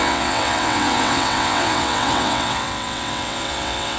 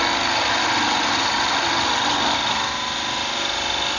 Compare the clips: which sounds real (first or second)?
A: second